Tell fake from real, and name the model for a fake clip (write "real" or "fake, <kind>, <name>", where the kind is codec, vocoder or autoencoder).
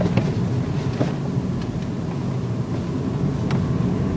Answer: real